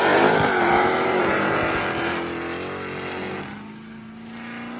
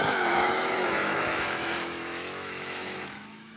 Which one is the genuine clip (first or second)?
first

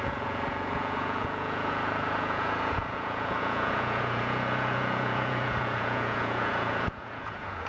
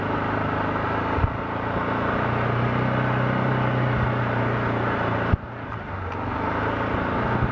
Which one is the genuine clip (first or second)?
second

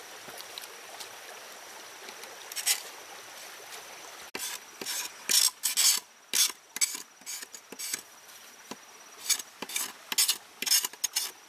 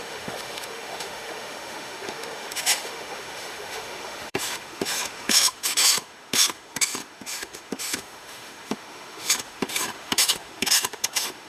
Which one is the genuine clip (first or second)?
first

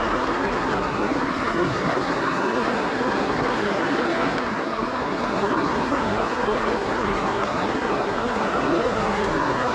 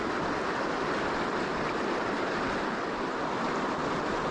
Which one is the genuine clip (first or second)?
second